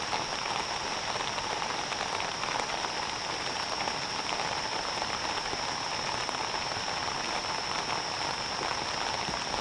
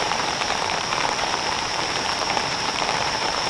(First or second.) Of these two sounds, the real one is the first